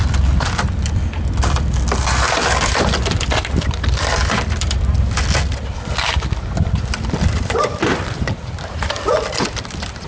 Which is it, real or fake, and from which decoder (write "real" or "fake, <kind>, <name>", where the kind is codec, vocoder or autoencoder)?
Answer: fake, vocoder, BigVGAN v2